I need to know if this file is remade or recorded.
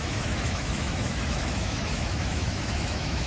remade